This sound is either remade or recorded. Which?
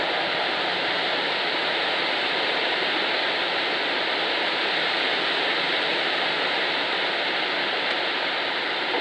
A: remade